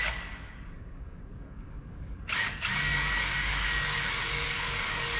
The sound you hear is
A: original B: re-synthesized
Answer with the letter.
B